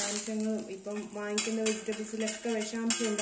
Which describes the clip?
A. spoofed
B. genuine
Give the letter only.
B